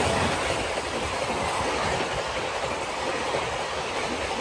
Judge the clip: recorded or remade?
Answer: remade